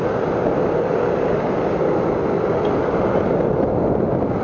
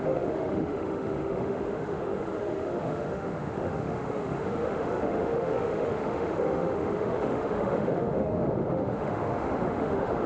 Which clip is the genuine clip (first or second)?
first